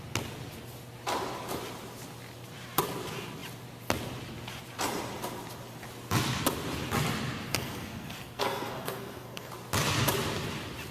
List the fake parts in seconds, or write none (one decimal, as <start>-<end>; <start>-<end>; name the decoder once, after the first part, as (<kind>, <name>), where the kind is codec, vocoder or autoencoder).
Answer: 7.5-9.5 (codec, SNAC)

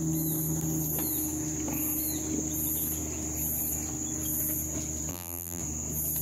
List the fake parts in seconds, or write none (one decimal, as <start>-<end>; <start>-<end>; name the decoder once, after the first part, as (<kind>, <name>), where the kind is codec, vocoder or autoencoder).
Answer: 5.1-5.6 (vocoder, BigVGAN v2)

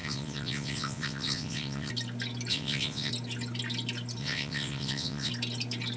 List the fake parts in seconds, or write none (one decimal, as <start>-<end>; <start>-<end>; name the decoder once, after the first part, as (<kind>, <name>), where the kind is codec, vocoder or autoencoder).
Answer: 0.0-1.9 (vocoder, WaveNeXt); 2.5-3.1; 4.2-5.3